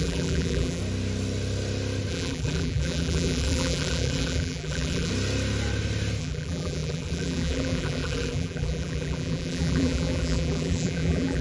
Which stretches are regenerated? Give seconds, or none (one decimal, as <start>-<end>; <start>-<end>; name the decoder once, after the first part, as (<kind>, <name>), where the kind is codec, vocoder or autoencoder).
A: 0.0-0.8 (vocoder, BigVGAN v2); 2.1-5.1; 6.2-11.4